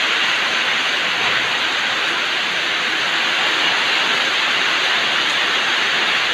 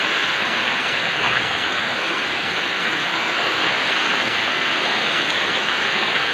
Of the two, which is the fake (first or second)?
second